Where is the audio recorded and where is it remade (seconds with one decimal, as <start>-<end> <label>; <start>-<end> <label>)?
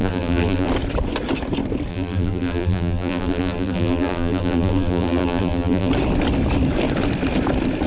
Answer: 0.0-0.7 remade; 0.7-1.9 recorded; 1.9-5.9 remade; 5.9-7.9 recorded